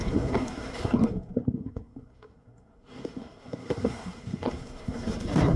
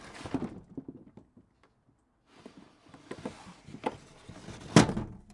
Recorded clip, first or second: second